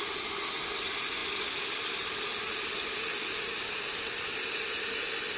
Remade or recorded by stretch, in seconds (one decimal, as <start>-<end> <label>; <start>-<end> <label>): 0.0-5.4 recorded